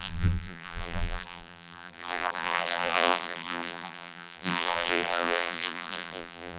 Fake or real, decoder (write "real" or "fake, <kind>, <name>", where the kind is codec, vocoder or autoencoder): fake, vocoder, BigVGAN v2